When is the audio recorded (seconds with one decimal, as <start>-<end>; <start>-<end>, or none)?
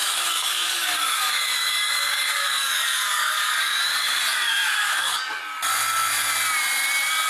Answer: 4.2-4.8; 5.4-7.3